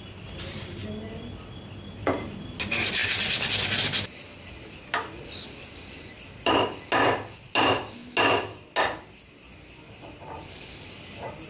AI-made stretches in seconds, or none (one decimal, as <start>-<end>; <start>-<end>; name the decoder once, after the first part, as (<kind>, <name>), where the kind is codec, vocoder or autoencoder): none